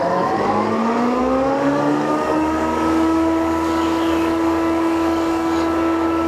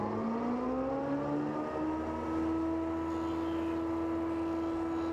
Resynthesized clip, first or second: first